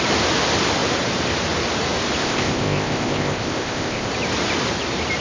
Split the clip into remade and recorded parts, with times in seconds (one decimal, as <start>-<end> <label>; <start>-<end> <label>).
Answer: 0.0-2.2 recorded; 2.2-4.1 remade; 4.1-5.2 recorded